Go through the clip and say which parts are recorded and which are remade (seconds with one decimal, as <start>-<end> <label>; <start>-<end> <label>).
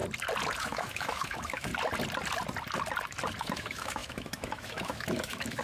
0.0-0.6 recorded; 0.6-1.7 remade; 1.7-3.4 recorded; 3.4-5.6 remade